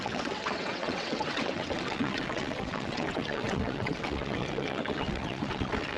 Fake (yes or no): yes